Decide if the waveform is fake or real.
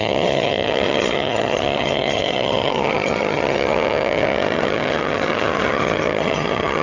fake